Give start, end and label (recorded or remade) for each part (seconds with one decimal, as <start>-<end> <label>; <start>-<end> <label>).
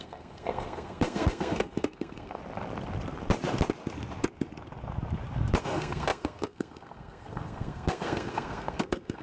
0.0-2.4 remade; 2.4-5.6 recorded; 5.6-9.2 remade